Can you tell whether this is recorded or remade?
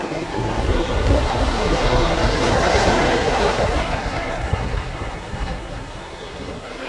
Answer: remade